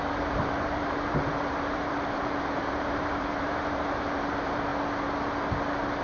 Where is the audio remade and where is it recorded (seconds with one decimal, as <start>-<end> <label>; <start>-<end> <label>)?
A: 0.0-4.7 remade; 4.7-6.0 recorded